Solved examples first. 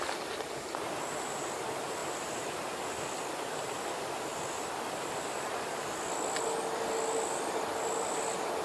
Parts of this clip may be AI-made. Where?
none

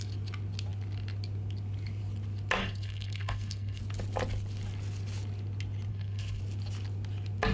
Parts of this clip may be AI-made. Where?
2.6-3.8 (codec, SNAC); 5.9-6.4

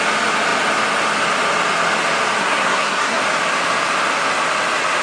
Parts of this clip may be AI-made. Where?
2.4-3.2 (codec, SNAC)

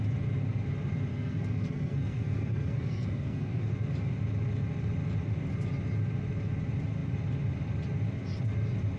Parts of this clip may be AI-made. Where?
1.1-3.7 (codec, SNAC)

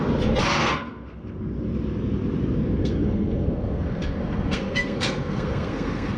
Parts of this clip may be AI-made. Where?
0.6-1.4 (codec, SNAC); 2.8-6.2

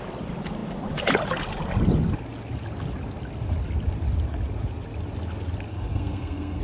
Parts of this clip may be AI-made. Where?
5.7-6.6 (codec, SNAC)